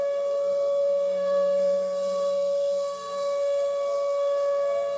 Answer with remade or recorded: remade